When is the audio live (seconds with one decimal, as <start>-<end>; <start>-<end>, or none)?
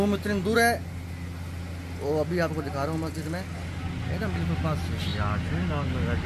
0.0-6.3